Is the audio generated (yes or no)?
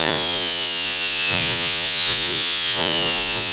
yes